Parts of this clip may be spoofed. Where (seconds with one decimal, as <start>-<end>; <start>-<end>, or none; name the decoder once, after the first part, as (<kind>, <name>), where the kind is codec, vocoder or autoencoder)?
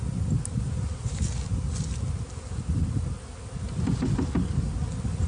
none